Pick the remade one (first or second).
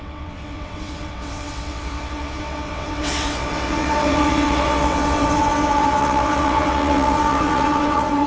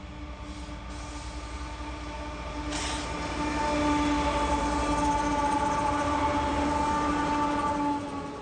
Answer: first